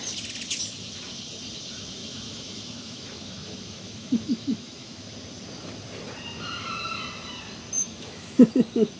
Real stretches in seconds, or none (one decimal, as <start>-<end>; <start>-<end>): 0.0-2.0; 5.0-7.8; 8.5-9.0